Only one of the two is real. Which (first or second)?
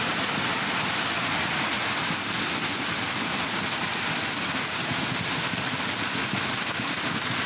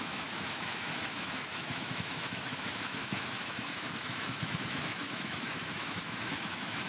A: first